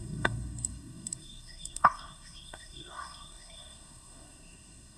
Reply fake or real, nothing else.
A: fake